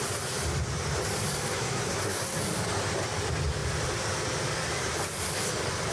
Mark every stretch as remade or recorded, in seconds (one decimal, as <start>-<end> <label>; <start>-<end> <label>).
0.0-1.5 recorded; 1.5-2.4 remade; 2.4-5.9 recorded